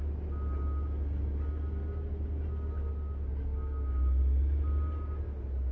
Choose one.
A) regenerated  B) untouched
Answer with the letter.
B